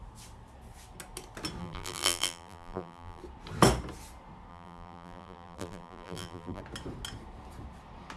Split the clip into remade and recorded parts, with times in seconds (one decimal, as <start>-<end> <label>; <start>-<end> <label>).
0.0-1.6 recorded; 1.6-3.2 remade; 3.2-4.5 recorded; 4.5-6.6 remade; 6.6-8.2 recorded